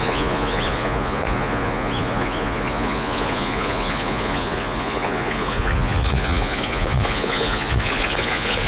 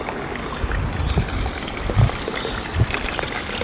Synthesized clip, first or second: first